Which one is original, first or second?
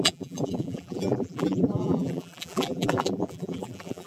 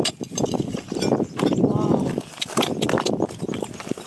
second